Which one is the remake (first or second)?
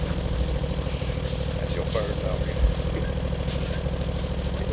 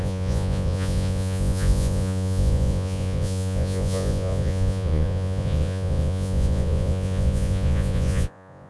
second